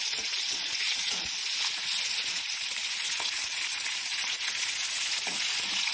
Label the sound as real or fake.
fake